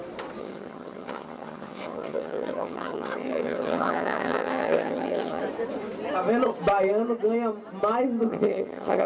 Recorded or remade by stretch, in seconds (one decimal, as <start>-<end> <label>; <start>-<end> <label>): 0.0-0.4 recorded; 0.4-5.4 remade; 5.4-8.3 recorded; 8.3-9.1 remade

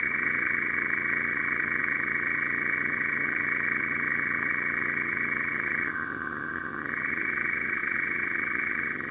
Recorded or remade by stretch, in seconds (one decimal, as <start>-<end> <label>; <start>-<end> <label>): 0.0-9.1 remade

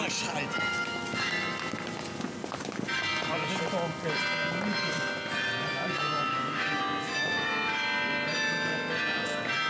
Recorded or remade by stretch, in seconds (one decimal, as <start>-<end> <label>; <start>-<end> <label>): 0.0-0.7 recorded; 0.7-1.3 remade; 1.3-6.3 recorded; 6.3-6.8 remade; 6.8-9.7 recorded

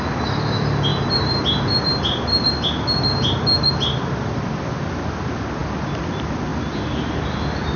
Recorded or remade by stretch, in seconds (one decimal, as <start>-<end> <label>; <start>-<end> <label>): 0.0-7.8 recorded

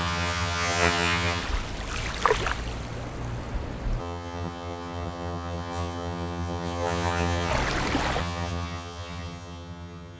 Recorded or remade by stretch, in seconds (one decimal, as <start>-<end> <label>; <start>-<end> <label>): 0.0-1.4 remade; 1.4-4.0 recorded; 4.0-7.5 remade; 7.5-8.2 recorded; 8.2-10.2 remade